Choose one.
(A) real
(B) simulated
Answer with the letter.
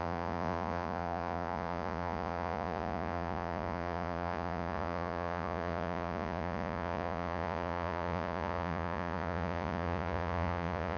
B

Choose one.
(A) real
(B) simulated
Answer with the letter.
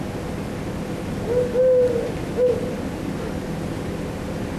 A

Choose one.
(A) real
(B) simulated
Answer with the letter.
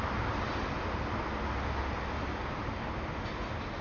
A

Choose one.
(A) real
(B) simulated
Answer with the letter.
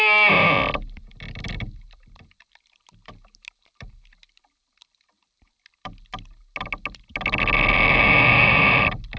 A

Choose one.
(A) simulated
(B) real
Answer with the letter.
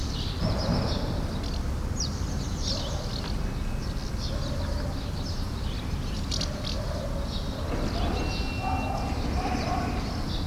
B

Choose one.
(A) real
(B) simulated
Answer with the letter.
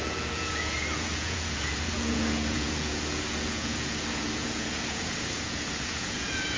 B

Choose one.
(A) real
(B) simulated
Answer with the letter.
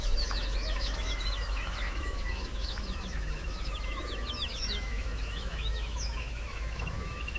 B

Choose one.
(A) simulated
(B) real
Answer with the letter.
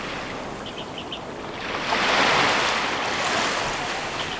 B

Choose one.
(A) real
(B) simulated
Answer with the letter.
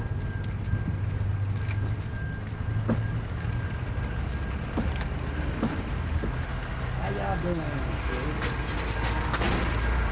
A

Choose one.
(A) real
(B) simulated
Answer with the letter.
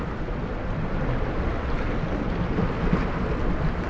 A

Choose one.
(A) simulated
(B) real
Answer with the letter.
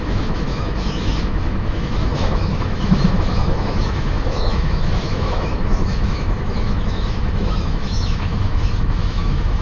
A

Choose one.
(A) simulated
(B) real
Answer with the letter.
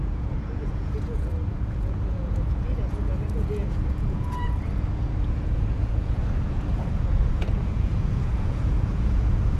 A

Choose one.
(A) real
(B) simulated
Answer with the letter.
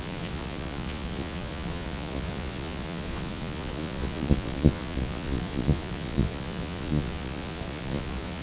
B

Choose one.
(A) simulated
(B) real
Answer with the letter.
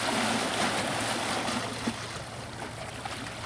B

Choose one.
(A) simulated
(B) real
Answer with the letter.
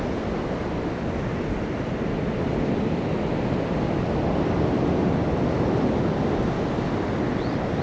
B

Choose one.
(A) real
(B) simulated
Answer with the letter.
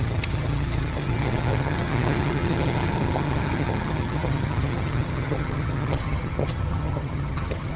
B